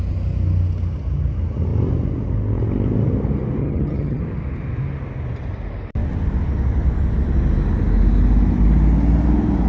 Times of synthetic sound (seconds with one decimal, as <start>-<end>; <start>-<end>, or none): 3.6-4.2